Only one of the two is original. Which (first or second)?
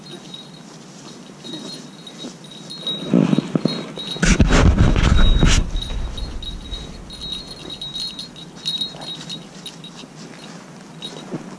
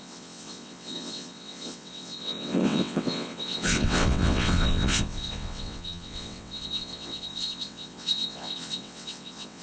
first